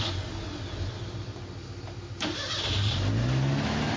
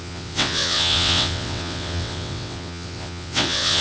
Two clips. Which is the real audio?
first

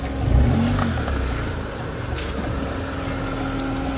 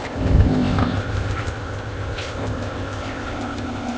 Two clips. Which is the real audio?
first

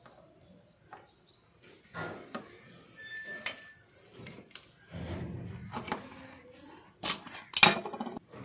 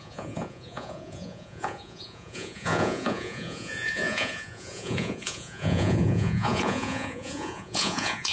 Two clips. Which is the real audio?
first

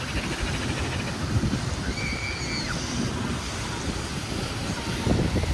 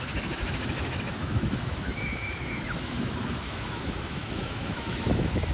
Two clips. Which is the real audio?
first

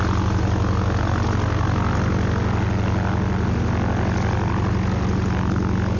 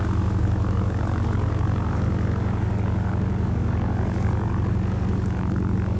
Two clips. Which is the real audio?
first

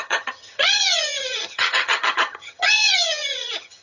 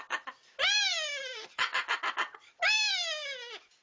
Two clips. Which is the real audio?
second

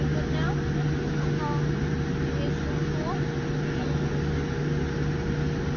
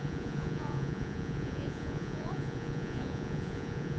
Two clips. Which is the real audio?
first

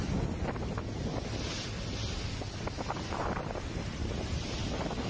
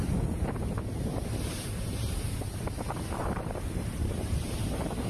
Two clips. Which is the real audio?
first